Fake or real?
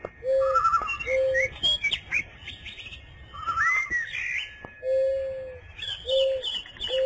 real